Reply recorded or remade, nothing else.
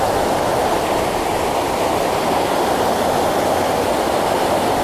recorded